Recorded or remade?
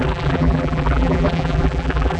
remade